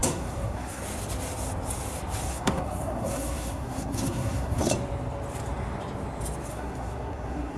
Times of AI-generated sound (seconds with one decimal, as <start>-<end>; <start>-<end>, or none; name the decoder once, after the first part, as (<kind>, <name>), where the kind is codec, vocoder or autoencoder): 0.0-0.8 (codec, SNAC); 2.3-4.7; 6.5-7.6